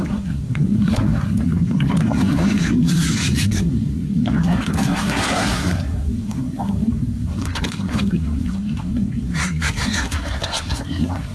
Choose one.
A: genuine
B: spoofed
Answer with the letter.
B